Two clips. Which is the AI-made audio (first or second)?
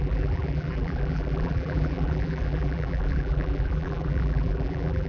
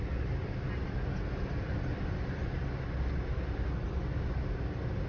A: first